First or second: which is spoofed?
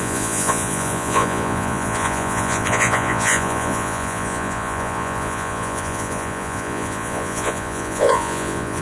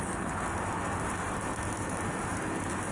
first